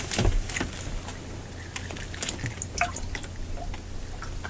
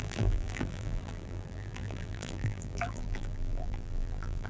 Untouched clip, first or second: first